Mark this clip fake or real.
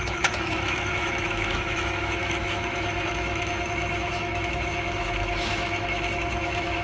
fake